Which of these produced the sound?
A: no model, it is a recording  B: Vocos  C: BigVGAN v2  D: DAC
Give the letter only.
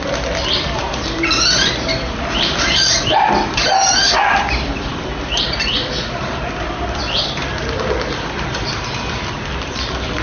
C